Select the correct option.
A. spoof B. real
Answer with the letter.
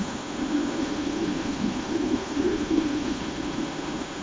A